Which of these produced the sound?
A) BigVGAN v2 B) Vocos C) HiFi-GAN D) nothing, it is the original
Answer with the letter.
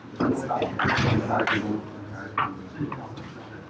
D